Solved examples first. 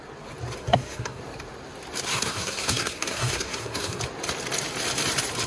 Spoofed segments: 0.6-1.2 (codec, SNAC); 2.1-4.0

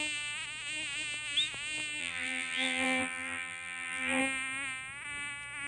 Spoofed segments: 2.0-4.2 (vocoder, BigVGAN v2)

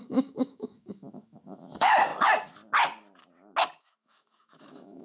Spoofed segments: 0.0-2.1 (autoencoder, DAC-VAE); 3.8-5.0

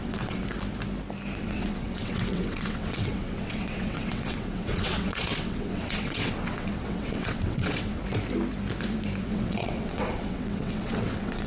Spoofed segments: 0.0-0.4 (vocoder, WaveNeXt); 1.4-8.0; 9.2-11.5

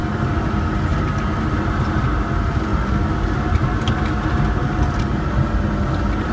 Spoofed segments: none

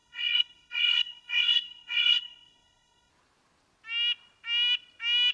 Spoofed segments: 0.0-3.1 (codec, SNAC)

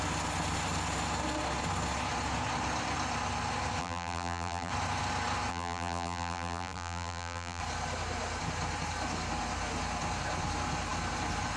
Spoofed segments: 3.8-4.7 (vocoder, BigVGAN v2); 5.5-7.6

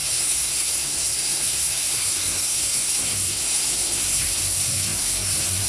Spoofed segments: 0.0-5.7 (codec, SNAC)